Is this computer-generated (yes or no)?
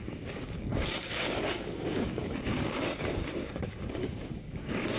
yes